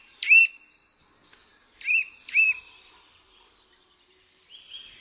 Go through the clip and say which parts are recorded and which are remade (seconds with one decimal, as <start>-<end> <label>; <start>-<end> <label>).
0.0-5.0 remade